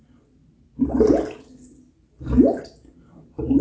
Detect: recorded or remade recorded